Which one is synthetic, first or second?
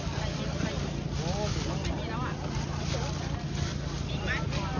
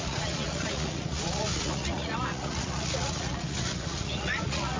second